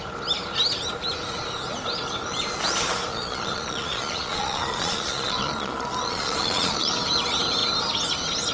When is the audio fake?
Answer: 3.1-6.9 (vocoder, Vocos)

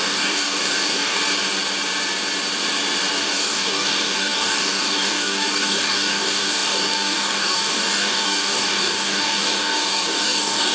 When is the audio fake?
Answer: 0.0-1.2 (codec, DAC); 3.2-10.7

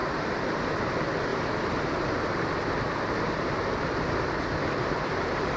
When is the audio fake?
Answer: 1.3-2.1 (vocoder, BigVGAN v2); 4.6-5.6

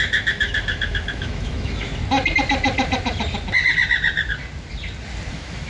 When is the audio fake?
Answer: 0.0-1.9 (autoencoder, DAC-VAE); 5.3-5.7

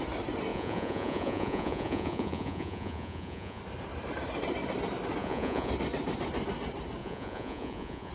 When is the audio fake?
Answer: 0.5-3.6 (vocoder, Vocos); 5.2-5.7; 7.0-8.1

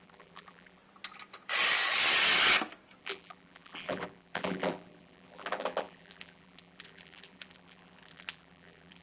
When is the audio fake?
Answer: 0.0-0.8 (vocoder, BigVGAN v2); 3.0-9.0

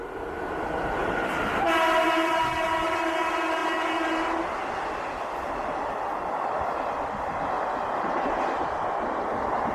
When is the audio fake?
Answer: none

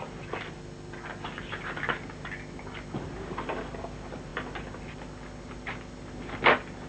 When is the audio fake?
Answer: none